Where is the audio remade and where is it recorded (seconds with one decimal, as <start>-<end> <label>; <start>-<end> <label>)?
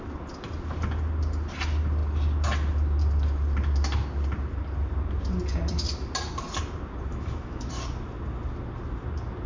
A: 0.0-7.1 recorded; 7.1-7.7 remade; 7.7-9.5 recorded